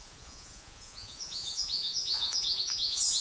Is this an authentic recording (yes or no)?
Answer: no